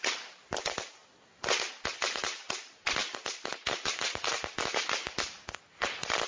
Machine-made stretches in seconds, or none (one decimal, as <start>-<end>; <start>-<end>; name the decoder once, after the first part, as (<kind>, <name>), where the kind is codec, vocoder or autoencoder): none